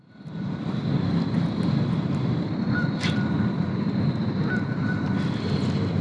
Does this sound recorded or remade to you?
recorded